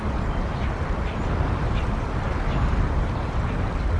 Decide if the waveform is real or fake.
real